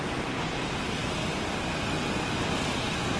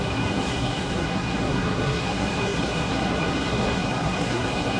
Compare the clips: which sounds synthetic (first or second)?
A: second